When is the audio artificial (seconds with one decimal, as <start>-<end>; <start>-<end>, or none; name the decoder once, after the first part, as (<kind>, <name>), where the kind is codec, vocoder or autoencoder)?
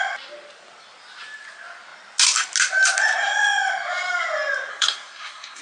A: 4.7-5.6 (codec, SNAC)